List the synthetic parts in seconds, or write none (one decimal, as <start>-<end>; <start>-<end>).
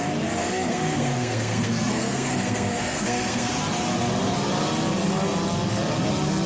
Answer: 0.4-3.5